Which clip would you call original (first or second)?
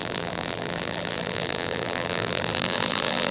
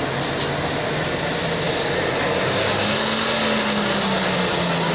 second